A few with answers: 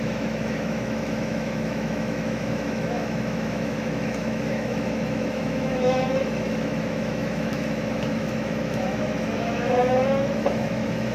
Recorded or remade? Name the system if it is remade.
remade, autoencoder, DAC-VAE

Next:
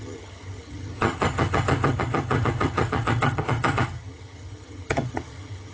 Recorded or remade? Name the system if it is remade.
remade, vocoder, HiFi-GAN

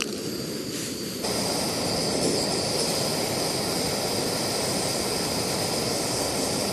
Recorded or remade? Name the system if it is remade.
recorded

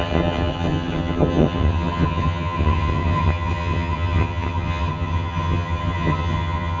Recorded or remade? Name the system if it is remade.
remade, vocoder, HiFi-GAN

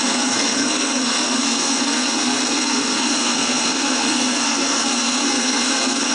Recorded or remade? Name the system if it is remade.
remade, codec, SNAC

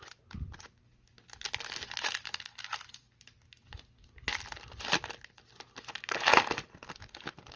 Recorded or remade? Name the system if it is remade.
recorded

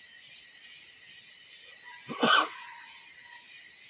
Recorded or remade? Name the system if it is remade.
recorded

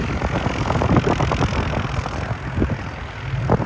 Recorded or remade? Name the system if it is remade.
recorded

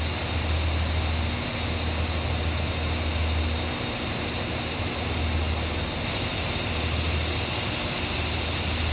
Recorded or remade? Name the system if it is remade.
recorded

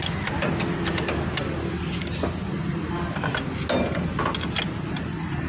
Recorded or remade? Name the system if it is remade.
recorded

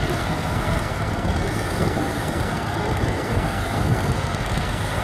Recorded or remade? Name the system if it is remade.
remade, codec, SNAC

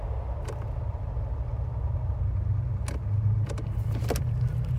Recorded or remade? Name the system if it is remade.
recorded